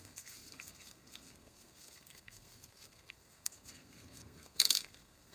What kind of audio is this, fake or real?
fake